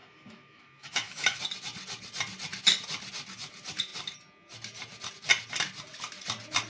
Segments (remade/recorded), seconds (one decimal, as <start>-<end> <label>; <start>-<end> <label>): 0.0-1.4 remade; 1.4-6.7 recorded